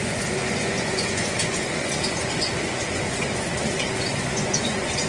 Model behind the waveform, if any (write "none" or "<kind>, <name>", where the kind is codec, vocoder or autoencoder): vocoder, Vocos